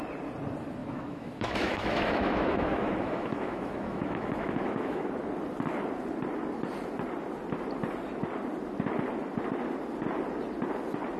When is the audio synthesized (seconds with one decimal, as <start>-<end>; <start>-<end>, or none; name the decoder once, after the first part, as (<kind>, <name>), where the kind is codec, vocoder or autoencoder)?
0.8-5.1 (autoencoder, DAC-VAE)